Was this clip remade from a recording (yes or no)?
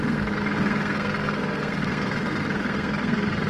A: yes